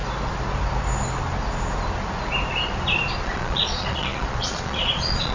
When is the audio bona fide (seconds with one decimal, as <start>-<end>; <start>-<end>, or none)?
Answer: 0.0-3.2